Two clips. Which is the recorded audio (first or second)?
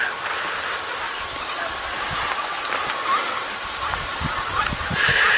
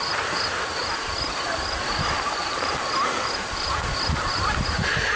first